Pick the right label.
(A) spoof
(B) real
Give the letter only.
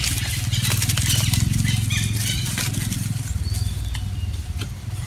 B